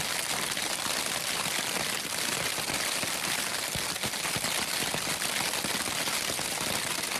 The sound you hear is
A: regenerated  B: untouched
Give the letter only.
B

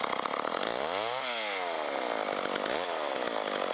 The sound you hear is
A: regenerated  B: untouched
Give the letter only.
B